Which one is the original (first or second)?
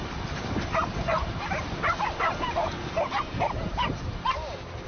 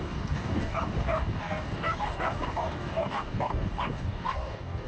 first